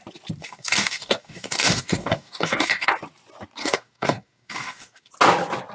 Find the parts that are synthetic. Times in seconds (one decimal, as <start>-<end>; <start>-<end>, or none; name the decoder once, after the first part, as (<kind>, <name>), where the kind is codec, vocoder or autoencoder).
0.4-2.9 (codec, DAC); 3.6-5.1